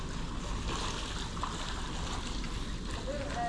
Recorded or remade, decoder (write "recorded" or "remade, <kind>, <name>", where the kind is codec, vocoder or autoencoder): recorded